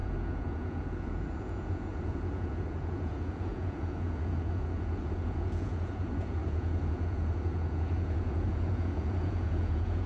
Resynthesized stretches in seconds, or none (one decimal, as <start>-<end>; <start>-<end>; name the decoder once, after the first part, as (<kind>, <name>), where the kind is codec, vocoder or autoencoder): 0.0-10.1 (vocoder, Vocos)